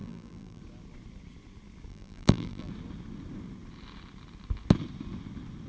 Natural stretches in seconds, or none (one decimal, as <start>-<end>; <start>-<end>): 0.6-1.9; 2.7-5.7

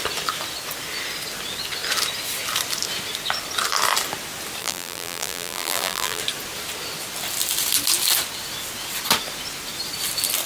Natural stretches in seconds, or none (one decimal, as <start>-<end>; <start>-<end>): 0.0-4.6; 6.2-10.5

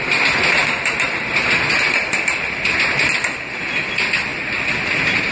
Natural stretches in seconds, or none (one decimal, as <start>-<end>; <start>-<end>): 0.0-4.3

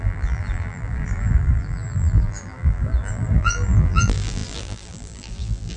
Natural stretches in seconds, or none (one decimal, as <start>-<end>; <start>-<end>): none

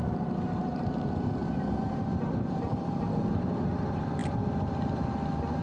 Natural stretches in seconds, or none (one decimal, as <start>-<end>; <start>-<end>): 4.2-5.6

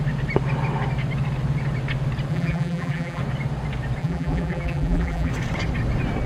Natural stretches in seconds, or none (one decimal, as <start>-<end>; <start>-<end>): 0.0-2.3; 3.2-4.0; 5.3-6.3

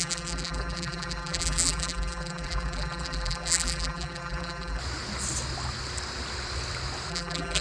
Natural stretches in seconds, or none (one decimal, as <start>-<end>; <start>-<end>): 4.8-7.1